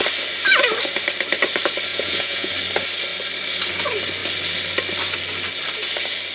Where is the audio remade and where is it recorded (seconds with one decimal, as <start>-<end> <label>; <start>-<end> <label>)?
0.0-1.9 recorded; 1.9-2.5 remade; 2.5-6.3 recorded